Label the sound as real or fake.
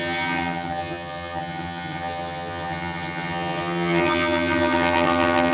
fake